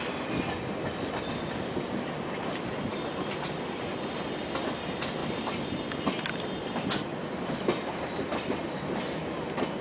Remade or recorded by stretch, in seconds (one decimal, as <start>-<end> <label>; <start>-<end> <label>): 0.0-5.2 recorded; 5.2-5.8 remade; 5.8-9.8 recorded